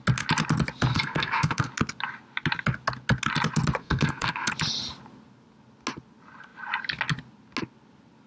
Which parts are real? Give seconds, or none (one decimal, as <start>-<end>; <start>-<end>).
0.0-0.9; 1.7-3.8; 4.5-8.3